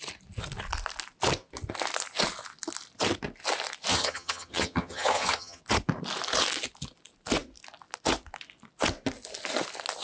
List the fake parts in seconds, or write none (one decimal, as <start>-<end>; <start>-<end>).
3.9-5.6